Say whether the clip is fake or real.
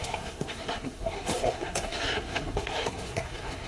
fake